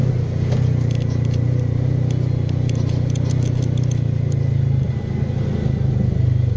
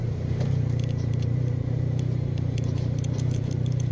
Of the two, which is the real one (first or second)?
first